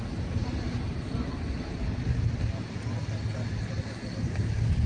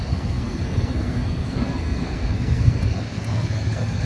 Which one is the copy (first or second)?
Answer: second